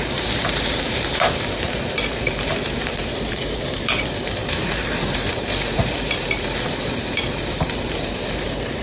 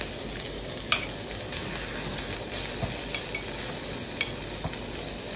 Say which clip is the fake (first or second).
first